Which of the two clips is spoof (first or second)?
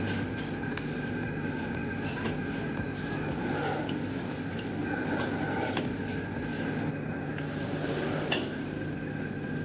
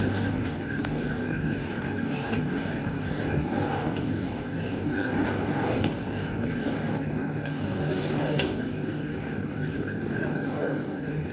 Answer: second